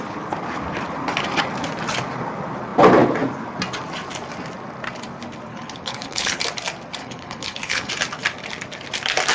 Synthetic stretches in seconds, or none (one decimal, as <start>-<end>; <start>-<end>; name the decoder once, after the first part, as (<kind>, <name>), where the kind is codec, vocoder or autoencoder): 5.5-6.4 (codec, HILCodec); 7.0-7.9